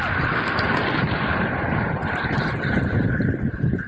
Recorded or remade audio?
remade